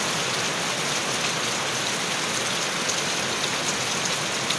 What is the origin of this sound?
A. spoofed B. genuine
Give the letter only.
B